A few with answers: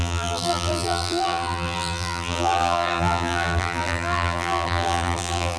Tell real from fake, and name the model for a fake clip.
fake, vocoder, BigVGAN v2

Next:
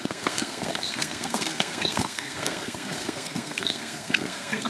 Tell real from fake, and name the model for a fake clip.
fake, codec, SNAC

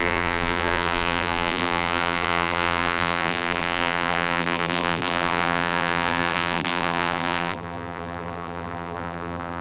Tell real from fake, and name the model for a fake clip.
fake, vocoder, BigVGAN v2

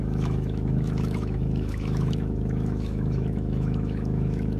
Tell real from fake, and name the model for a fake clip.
fake, autoencoder, DAC-VAE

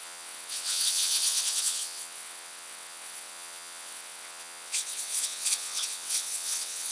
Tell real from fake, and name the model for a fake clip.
fake, vocoder, WaveNeXt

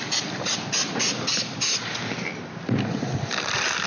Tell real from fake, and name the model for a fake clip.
real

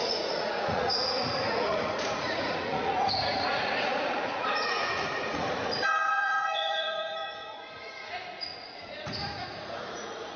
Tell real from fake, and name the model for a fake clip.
fake, vocoder, Vocos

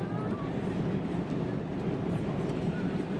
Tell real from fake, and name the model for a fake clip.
fake, vocoder, BigVGAN v2